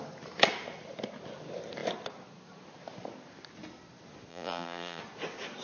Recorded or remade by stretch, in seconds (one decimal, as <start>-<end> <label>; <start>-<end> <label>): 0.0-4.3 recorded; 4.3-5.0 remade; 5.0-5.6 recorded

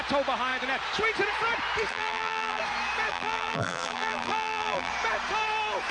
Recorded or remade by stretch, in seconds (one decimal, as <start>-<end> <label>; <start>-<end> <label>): 0.0-1.9 recorded; 1.9-2.6 remade; 2.6-3.1 recorded; 3.1-4.9 remade; 4.9-5.9 recorded

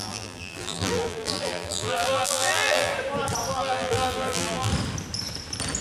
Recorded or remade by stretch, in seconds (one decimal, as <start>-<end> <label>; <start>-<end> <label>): 0.0-2.9 remade; 2.9-3.5 recorded; 3.5-4.7 remade; 4.7-5.8 recorded

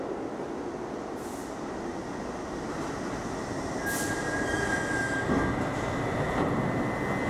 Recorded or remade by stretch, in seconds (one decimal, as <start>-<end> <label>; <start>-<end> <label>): 0.0-7.3 recorded